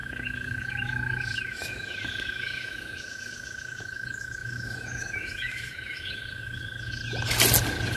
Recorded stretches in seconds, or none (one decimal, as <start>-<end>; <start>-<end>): 7.0-8.0